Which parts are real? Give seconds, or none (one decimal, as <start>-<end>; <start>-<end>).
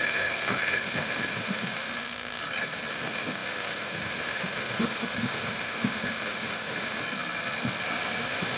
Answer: 2.4-2.9; 7.0-8.2